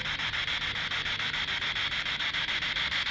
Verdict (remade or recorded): recorded